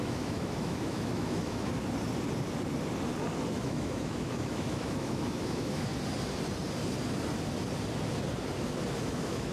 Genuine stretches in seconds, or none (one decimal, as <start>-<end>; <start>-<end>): 1.7-3.5; 5.9-9.0